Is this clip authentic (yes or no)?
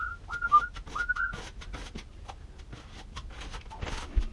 yes